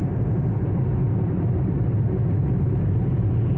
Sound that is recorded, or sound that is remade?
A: recorded